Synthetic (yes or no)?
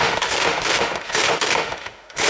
yes